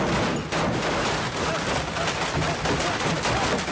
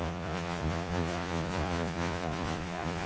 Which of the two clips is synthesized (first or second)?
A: second